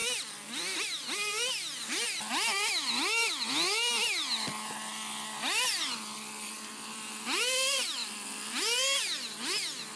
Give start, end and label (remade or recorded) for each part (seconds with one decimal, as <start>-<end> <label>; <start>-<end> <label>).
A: 0.0-10.0 recorded